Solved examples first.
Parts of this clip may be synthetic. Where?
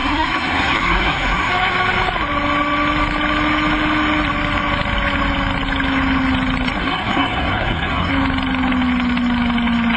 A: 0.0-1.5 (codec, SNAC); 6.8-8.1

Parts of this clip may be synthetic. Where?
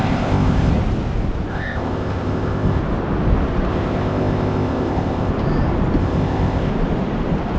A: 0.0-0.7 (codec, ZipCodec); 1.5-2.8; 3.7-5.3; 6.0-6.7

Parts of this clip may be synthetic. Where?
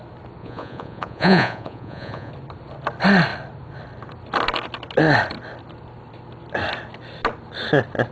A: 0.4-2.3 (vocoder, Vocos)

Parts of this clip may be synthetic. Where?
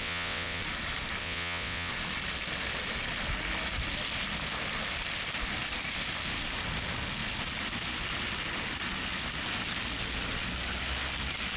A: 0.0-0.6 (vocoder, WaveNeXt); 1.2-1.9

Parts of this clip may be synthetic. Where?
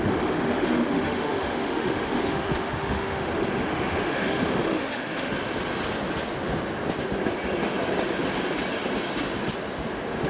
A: 0.0-5.3 (autoencoder, DAC-VAE)